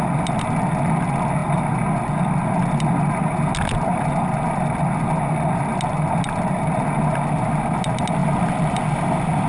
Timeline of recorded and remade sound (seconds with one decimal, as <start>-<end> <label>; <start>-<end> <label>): 0.0-9.5 recorded